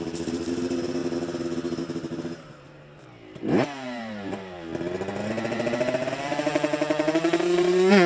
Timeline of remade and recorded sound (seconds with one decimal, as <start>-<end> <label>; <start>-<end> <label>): 0.0-1.0 remade; 1.0-1.8 recorded; 1.8-4.7 remade; 4.7-5.3 recorded; 5.3-8.1 remade